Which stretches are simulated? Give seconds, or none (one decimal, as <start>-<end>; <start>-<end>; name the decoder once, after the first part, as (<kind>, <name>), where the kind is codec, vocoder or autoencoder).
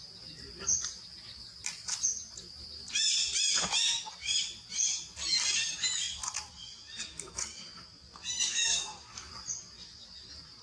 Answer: 7.1-7.8 (codec, DAC); 8.5-9.3